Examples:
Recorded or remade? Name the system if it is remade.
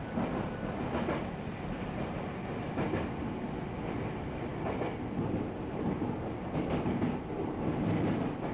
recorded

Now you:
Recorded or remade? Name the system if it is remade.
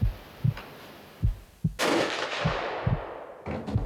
recorded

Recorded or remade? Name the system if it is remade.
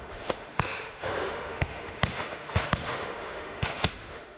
remade, autoencoder, DAC-VAE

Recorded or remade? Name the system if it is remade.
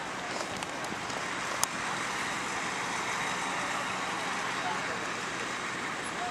recorded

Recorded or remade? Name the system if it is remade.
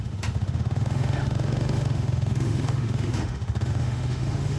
remade, autoencoder, DAC-VAE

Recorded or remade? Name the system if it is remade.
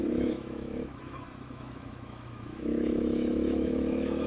remade, autoencoder, DAC-VAE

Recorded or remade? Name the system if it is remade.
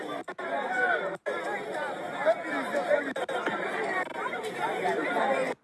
recorded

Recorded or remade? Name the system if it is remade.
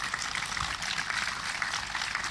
recorded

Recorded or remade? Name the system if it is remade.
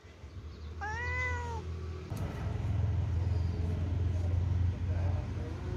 recorded